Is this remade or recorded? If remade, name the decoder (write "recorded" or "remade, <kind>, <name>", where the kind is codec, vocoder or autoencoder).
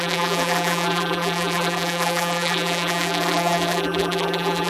remade, vocoder, BigVGAN v2